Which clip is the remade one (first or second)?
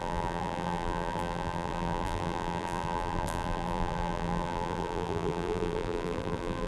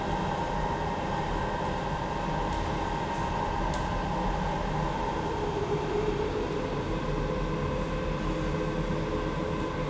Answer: first